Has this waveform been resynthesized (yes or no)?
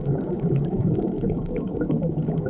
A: yes